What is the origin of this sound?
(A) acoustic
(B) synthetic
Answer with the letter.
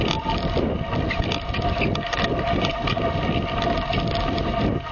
A